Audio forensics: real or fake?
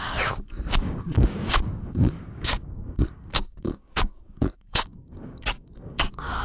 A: fake